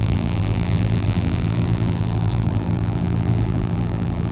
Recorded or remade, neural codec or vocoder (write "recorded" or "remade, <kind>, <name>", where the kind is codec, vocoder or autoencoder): remade, vocoder, BigVGAN v2